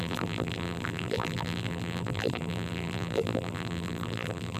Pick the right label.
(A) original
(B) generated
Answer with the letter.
B